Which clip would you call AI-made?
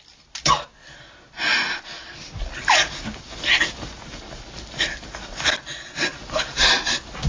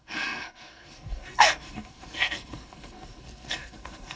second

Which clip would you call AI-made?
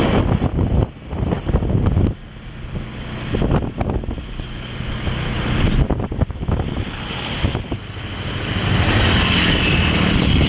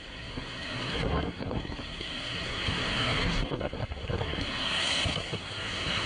second